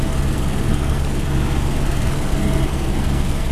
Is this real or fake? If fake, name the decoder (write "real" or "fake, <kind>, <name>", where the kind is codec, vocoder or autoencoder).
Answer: fake, codec, SNAC